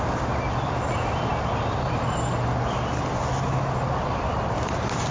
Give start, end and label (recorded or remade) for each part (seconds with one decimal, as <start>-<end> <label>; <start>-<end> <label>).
0.0-5.1 recorded